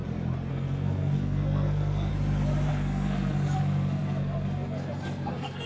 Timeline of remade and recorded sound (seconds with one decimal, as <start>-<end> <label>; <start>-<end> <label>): 0.0-0.5 recorded; 0.5-2.1 remade; 2.1-2.7 recorded; 2.7-5.7 remade